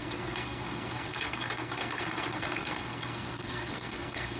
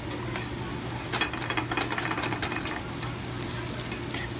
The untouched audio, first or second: second